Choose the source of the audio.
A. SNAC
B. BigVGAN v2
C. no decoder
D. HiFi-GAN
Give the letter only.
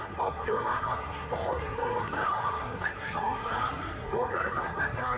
A